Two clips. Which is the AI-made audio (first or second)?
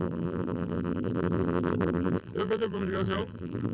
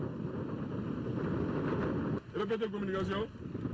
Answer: first